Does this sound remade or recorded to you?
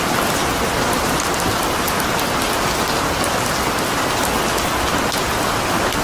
recorded